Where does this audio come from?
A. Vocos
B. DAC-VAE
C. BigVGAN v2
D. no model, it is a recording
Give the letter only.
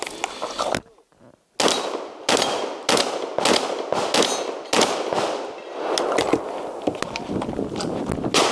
D